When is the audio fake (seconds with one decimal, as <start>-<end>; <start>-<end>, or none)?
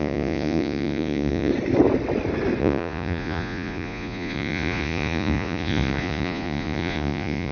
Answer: 0.0-1.5; 2.6-7.5